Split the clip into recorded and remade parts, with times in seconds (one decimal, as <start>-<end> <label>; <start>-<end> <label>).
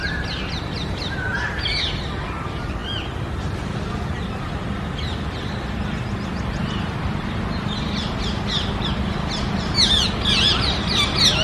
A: 0.0-1.3 recorded; 1.3-1.8 remade; 1.8-11.4 recorded